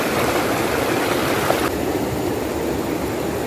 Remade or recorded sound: recorded